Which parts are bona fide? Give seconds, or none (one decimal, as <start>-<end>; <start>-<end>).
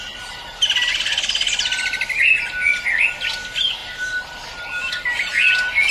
0.0-5.9